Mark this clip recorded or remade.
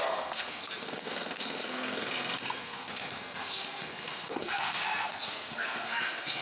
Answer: remade